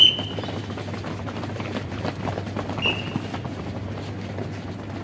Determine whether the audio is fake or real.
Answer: real